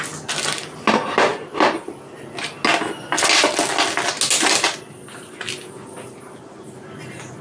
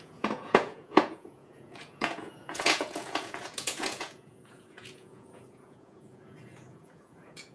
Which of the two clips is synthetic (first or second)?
second